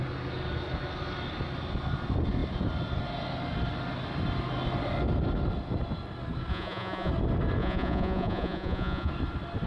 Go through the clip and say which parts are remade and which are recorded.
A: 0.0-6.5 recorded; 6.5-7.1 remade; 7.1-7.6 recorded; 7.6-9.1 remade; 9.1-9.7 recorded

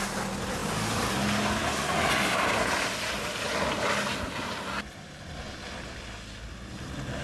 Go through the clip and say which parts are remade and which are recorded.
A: 0.0-7.2 recorded

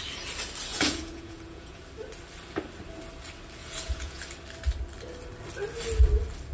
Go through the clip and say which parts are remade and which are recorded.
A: 0.0-0.7 recorded; 0.7-1.8 remade; 1.8-3.6 recorded; 3.6-4.2 remade; 4.2-6.5 recorded

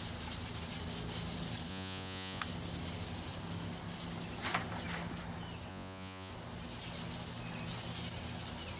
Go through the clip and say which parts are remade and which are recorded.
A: 0.0-1.7 recorded; 1.7-2.4 remade; 2.4-5.7 recorded; 5.7-6.3 remade; 6.3-8.8 recorded